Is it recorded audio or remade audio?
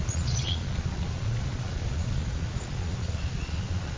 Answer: remade